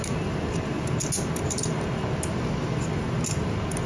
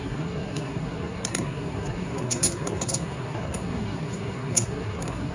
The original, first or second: first